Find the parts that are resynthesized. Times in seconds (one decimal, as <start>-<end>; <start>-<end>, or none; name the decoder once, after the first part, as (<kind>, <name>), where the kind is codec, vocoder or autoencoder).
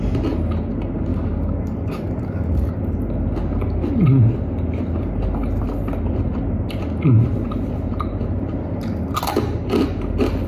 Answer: 1.1-2.7 (codec, DAC)